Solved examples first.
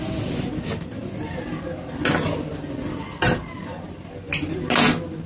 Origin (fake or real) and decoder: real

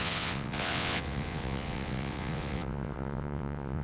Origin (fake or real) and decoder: fake, vocoder, WaveNeXt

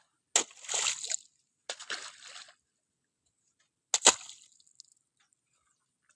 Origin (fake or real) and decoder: real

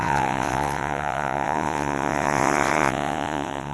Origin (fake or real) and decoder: fake, vocoder, WaveNeXt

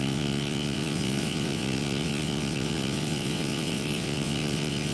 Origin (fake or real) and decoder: fake, vocoder, WaveNeXt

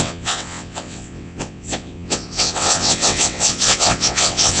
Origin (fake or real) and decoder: fake, vocoder, WaveNeXt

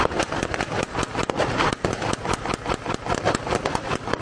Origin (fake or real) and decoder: real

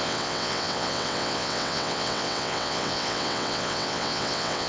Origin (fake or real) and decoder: fake, vocoder, WaveNeXt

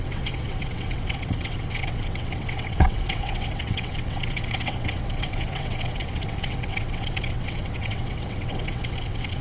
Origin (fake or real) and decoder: fake, vocoder, WaveNeXt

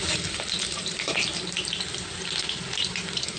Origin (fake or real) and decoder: real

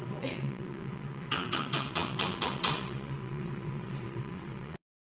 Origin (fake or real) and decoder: fake, vocoder, WaveNeXt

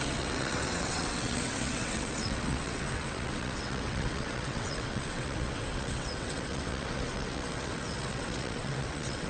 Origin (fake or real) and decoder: fake, vocoder, WaveNeXt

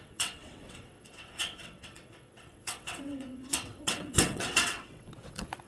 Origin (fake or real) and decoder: fake, vocoder, WaveNeXt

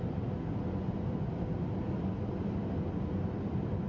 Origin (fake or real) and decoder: real